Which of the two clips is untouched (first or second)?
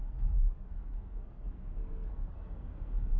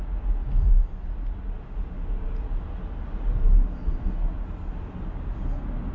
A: second